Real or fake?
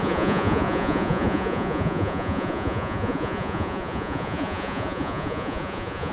fake